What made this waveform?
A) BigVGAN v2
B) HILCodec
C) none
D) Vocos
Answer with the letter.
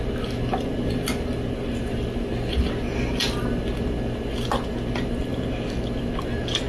C